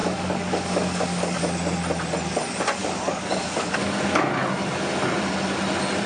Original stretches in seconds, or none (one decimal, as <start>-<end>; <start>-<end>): 1.4-2.8; 4.3-6.1